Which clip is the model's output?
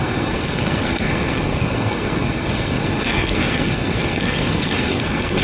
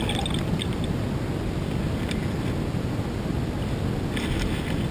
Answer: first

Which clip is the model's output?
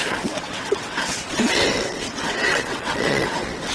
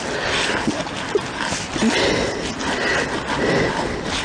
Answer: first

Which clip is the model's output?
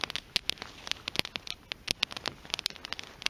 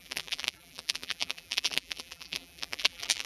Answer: second